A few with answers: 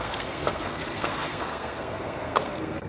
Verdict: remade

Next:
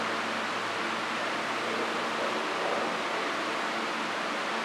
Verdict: recorded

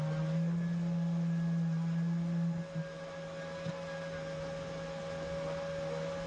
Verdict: recorded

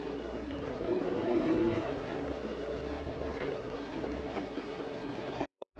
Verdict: remade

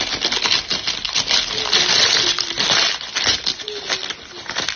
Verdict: recorded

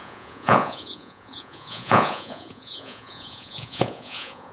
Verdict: remade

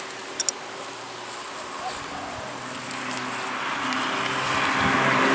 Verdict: recorded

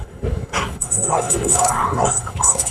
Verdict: remade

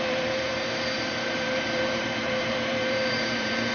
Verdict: remade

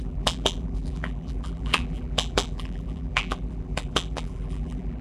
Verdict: remade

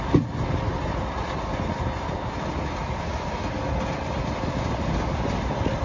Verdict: recorded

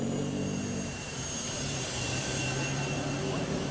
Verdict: remade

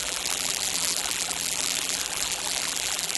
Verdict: remade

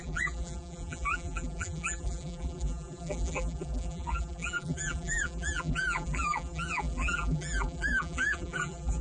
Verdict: remade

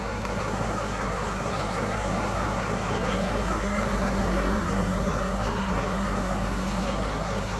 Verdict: remade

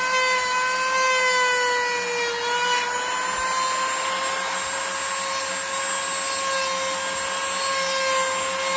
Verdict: recorded